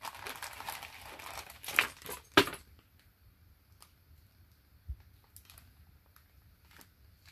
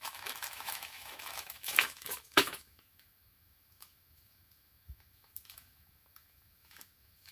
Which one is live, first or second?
first